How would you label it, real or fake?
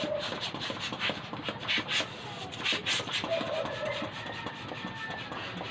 real